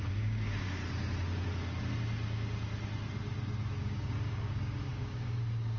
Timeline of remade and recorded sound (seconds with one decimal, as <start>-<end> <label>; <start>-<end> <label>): 0.0-0.8 remade; 0.8-3.8 recorded; 3.8-5.8 remade